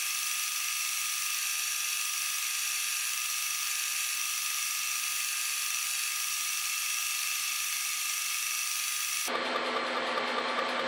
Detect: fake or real real